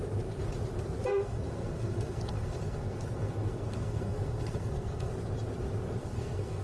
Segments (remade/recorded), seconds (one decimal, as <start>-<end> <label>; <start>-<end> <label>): 0.0-1.1 recorded; 1.1-5.1 remade; 5.1-6.0 recorded; 6.0-6.6 remade